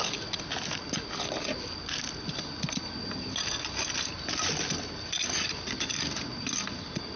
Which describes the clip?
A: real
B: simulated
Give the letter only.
A